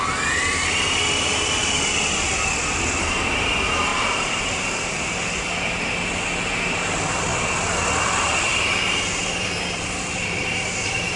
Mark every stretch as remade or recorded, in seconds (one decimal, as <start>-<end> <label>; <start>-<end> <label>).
0.0-3.9 recorded; 3.9-4.8 remade; 4.8-8.5 recorded; 8.5-11.2 remade